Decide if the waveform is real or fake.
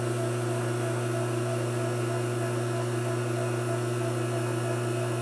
real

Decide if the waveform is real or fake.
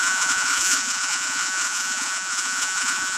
fake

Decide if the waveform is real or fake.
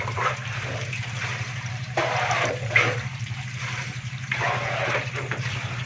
fake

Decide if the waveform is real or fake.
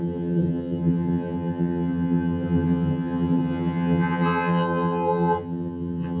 fake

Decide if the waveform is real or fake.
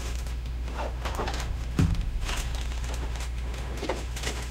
fake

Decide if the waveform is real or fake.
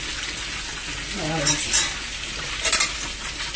real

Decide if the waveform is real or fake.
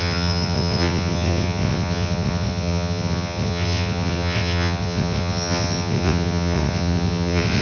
fake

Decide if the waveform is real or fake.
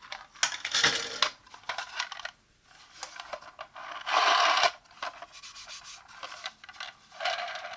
real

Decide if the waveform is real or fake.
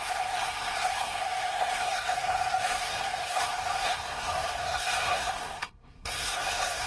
fake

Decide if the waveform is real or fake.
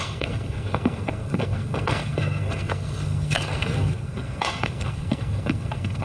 fake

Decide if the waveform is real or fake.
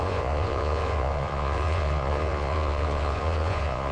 fake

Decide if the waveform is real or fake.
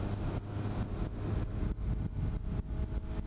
real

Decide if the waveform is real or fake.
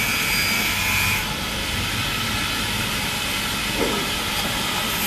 real